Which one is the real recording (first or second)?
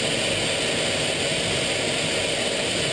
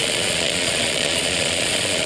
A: first